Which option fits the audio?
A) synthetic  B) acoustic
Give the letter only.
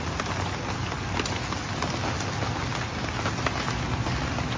B